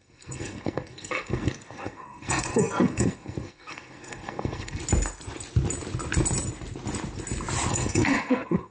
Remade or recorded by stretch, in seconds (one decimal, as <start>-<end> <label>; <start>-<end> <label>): 0.0-4.8 remade; 4.8-7.7 recorded; 7.7-8.7 remade

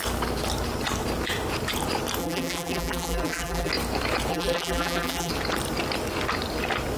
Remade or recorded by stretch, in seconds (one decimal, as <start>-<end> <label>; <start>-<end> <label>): 0.0-2.2 recorded; 2.2-3.7 remade; 3.7-4.3 recorded; 4.3-5.3 remade; 5.3-7.0 recorded

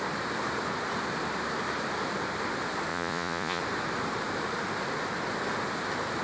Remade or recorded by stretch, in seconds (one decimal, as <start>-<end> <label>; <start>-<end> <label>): 0.0-2.9 recorded; 2.9-3.6 remade; 3.6-6.2 recorded